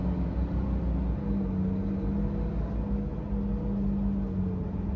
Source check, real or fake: real